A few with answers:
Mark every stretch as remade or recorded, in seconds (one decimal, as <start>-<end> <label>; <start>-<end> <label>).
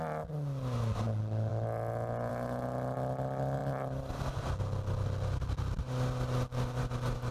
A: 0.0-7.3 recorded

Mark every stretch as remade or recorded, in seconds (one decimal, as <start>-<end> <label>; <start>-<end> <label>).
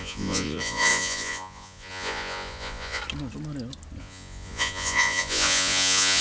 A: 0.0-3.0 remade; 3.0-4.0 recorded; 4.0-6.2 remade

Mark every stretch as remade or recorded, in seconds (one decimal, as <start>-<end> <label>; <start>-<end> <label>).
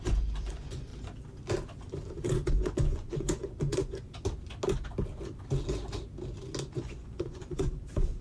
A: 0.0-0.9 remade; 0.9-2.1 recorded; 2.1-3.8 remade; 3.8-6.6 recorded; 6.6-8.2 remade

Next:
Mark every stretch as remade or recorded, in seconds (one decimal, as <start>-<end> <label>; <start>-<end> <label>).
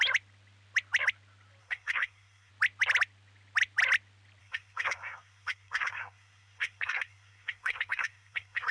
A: 0.0-1.6 recorded; 1.6-2.5 remade; 2.5-4.4 recorded; 4.4-8.7 remade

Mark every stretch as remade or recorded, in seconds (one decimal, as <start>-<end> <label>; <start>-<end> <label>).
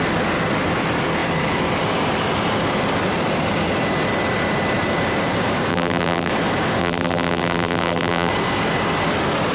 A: 0.0-5.7 recorded; 5.7-6.3 remade; 6.3-6.8 recorded; 6.8-8.3 remade; 8.3-9.5 recorded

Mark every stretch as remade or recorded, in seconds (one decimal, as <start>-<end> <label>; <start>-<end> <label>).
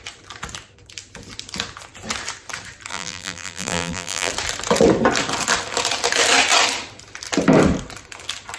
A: 0.0-2.9 recorded; 2.9-4.3 remade; 4.3-8.6 recorded